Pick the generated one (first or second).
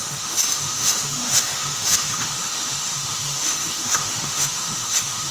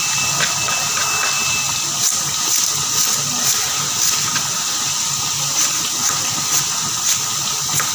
first